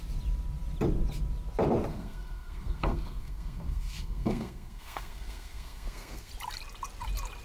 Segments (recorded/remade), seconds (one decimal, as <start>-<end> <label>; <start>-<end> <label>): 0.0-1.9 recorded; 1.9-6.3 remade; 6.3-7.4 recorded

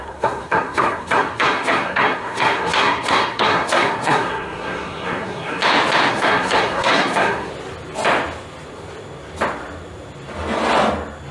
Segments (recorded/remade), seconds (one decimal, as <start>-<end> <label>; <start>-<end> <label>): 0.0-5.6 remade; 5.6-6.1 recorded; 6.1-7.5 remade; 7.5-11.3 recorded

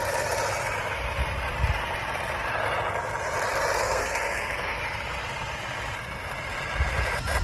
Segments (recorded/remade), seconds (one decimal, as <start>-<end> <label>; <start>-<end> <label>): 0.0-3.8 recorded; 3.8-4.8 remade; 4.8-7.4 recorded